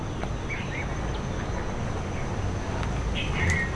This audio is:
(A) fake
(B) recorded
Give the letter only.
B